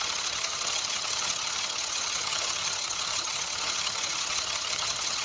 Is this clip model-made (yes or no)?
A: yes